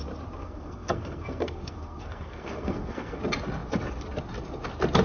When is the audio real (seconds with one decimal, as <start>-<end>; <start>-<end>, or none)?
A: 0.0-0.4; 3.2-5.0